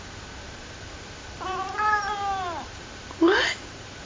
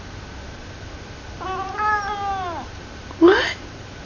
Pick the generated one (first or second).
first